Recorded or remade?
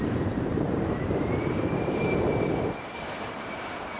remade